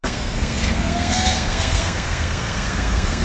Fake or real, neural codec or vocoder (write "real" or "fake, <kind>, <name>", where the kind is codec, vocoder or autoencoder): fake, codec, SNAC